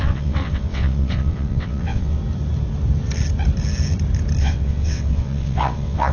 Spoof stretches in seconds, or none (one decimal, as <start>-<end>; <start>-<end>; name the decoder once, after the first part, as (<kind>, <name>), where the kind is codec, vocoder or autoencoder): 0.0-2.2 (vocoder, WaveNeXt); 4.4-6.1